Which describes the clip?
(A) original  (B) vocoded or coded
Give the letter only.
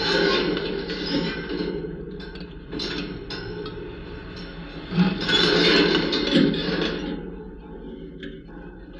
A